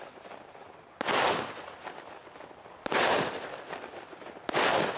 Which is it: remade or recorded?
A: recorded